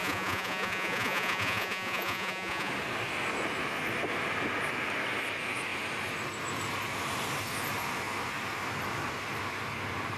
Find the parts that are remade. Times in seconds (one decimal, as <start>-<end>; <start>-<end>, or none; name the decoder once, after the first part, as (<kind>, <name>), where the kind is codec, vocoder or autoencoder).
0.0-2.7 (vocoder, Vocos)